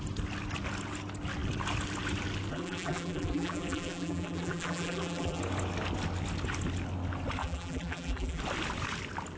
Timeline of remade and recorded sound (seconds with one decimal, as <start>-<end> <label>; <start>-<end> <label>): 0.0-2.5 recorded; 2.5-5.4 remade; 5.4-7.4 recorded; 7.4-8.4 remade; 8.4-9.4 recorded